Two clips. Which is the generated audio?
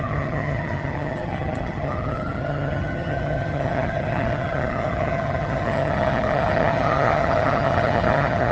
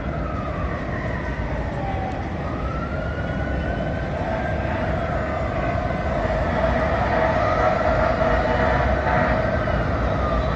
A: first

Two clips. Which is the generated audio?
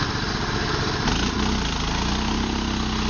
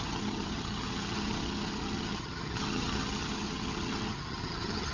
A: second